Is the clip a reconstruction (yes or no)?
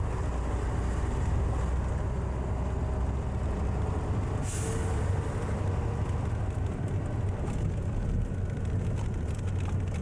no